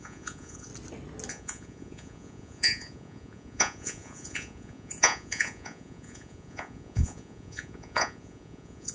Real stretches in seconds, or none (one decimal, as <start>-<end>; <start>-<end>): 0.7-1.3